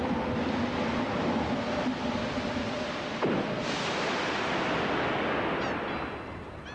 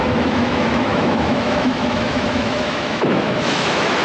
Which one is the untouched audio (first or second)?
first